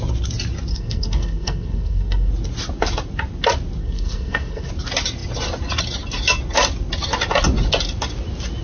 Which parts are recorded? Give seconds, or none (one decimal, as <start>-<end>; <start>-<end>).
0.0-0.7; 2.3-3.8; 4.7-8.6